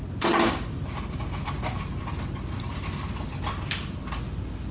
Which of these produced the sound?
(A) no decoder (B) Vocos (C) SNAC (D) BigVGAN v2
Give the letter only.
A